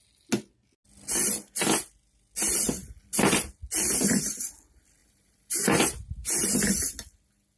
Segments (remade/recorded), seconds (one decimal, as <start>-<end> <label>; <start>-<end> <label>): 0.0-5.0 recorded; 5.0-6.4 remade; 6.4-7.6 recorded